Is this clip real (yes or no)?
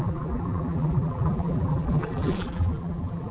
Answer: no